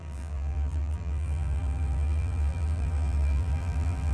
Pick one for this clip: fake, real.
fake